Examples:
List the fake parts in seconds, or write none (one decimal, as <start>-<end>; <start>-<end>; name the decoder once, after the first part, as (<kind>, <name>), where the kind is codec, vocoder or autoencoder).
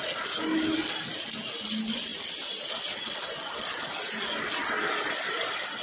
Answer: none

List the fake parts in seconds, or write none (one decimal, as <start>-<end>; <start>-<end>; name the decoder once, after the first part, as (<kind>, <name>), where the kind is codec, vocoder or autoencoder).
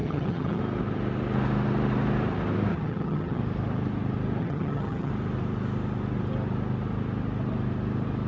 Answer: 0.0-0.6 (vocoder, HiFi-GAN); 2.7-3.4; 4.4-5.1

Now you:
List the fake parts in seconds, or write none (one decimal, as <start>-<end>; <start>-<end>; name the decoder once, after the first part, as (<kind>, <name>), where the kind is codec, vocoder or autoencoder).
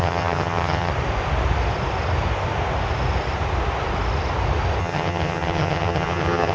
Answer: 0.0-0.9 (vocoder, HiFi-GAN); 4.8-6.5